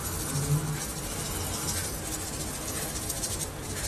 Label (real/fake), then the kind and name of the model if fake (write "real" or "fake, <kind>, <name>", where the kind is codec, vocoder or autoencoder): real